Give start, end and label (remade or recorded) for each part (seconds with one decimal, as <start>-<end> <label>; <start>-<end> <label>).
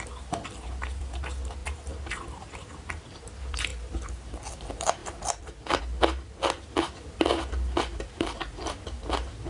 0.0-1.6 recorded; 1.6-2.1 remade; 2.1-5.0 recorded; 5.0-5.8 remade; 5.8-9.5 recorded